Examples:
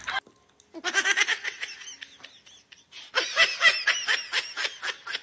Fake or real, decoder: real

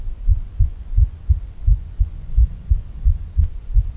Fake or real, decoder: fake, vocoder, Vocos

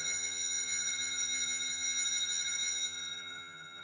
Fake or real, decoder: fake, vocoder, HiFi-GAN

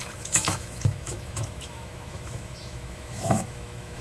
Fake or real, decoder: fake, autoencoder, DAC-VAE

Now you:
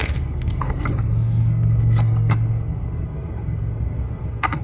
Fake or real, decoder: fake, codec, SNAC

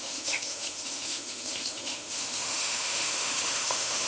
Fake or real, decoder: fake, autoencoder, DAC-VAE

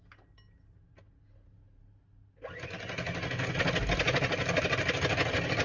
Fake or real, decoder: real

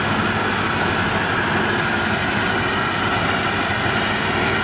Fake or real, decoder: real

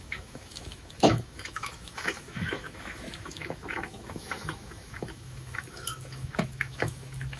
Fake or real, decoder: fake, autoencoder, DAC-VAE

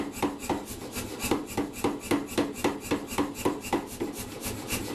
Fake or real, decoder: real